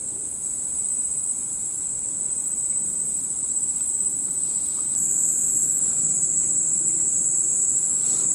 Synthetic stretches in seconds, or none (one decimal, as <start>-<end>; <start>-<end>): 2.4-5.1; 6.7-7.5

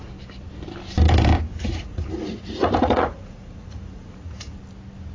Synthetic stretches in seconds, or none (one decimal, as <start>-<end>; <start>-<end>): 1.5-4.6

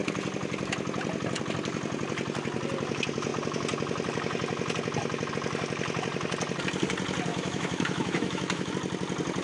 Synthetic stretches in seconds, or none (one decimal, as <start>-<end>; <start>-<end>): 7.3-8.7

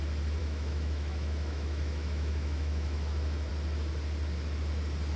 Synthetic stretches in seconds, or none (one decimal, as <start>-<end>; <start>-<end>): 0.4-3.5

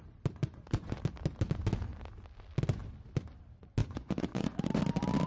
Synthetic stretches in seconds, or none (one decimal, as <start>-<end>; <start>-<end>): 0.4-1.0; 3.8-4.8

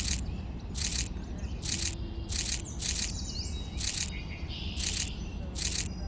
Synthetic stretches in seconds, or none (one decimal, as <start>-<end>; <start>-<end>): none

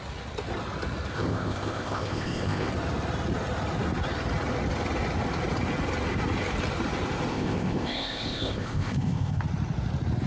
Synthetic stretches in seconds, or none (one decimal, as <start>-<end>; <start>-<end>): 1.1-2.7; 7.3-9.4